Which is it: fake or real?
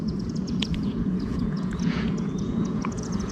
fake